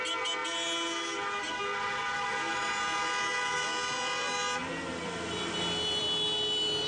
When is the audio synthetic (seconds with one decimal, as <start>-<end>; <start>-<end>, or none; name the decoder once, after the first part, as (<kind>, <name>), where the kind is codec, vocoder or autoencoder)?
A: none